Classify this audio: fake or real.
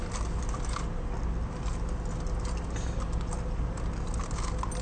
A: real